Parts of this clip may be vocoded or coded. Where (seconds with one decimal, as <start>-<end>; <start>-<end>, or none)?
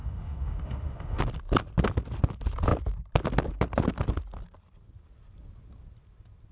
0.0-1.2